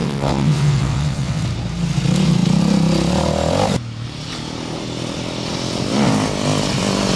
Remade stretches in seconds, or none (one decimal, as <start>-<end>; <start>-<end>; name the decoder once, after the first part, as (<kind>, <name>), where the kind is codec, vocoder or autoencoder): 0.0-1.4 (vocoder, WaveNeXt)